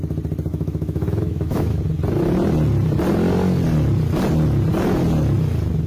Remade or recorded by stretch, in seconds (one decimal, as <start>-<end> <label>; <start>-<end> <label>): 0.0-0.5 recorded; 0.5-1.8 remade; 1.8-5.9 recorded